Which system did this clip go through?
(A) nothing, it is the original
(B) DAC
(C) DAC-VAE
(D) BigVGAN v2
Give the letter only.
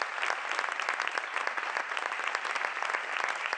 D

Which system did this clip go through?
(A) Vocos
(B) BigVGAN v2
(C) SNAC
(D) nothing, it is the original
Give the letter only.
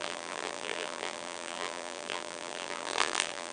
B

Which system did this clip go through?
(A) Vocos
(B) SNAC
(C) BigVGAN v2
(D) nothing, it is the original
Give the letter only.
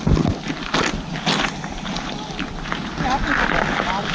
D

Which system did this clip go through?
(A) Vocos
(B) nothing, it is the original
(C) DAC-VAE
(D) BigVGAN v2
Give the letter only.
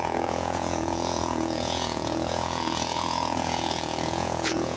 A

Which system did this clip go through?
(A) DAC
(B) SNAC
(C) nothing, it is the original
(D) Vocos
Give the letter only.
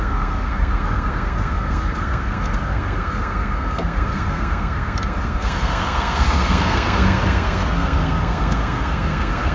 B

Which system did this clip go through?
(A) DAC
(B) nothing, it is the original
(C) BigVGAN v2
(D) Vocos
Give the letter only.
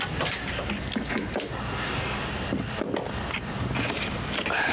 B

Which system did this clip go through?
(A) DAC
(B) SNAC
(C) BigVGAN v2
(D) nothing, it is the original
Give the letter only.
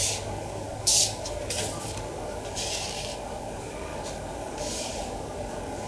A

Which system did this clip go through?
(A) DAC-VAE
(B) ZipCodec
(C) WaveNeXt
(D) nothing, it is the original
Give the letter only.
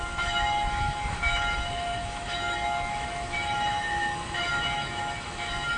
A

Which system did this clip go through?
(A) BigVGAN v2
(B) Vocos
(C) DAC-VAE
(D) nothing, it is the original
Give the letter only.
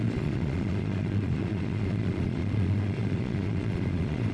B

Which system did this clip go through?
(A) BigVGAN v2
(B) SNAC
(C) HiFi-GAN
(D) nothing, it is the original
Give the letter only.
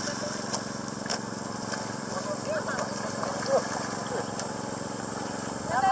D